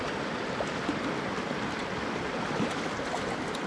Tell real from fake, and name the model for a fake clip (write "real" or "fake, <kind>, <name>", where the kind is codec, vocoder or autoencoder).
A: real